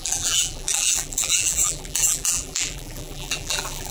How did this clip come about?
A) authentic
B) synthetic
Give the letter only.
B